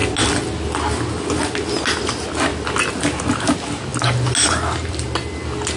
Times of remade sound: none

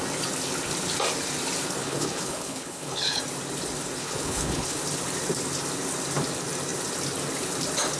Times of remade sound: 1.8-3.2 (codec, HILCodec); 4.0-4.8

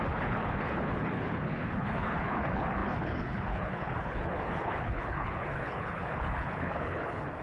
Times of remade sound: 0.0-7.4 (codec, HILCodec)